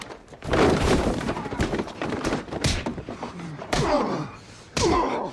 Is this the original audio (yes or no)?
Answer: no